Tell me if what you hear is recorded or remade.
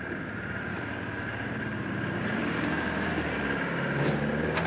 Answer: remade